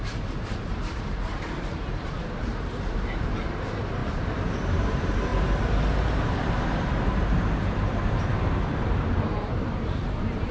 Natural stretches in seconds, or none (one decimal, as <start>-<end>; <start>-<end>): 4.0-4.7; 5.3-6.4